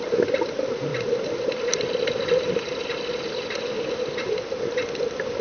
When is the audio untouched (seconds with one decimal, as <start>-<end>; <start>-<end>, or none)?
0.0-0.9; 3.9-5.4

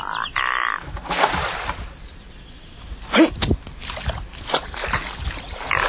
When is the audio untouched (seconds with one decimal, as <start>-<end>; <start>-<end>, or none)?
0.0-5.9

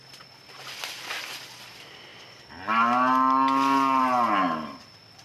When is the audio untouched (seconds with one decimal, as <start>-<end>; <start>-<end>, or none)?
0.0-5.2

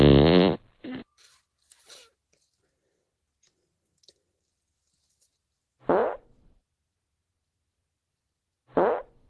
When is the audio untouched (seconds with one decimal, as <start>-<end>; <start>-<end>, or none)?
0.0-6.0; 7.6-9.3

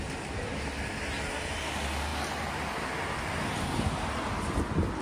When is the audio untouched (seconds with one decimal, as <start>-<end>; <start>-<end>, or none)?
0.0-5.0